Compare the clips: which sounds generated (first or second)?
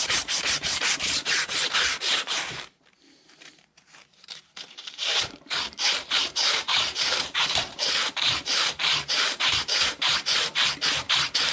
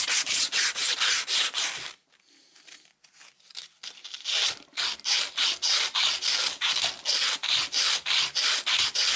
first